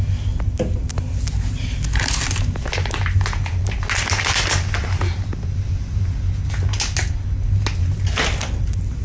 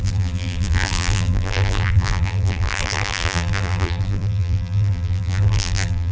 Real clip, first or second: first